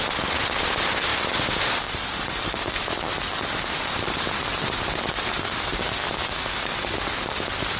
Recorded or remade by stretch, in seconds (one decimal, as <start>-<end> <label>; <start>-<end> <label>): 0.0-6.0 recorded; 6.0-6.7 remade; 6.7-7.8 recorded